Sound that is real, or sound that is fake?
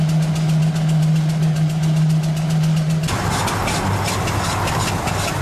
real